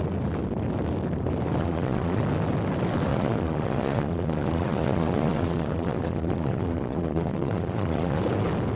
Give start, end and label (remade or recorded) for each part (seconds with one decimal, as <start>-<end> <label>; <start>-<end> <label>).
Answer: 0.0-1.6 recorded; 1.6-2.2 remade; 2.2-3.1 recorded; 3.1-8.2 remade; 8.2-8.8 recorded